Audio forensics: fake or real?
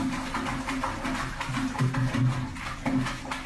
real